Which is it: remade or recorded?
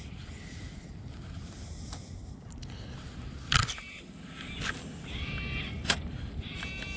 recorded